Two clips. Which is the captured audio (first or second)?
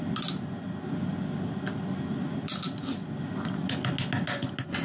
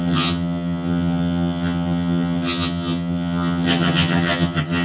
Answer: first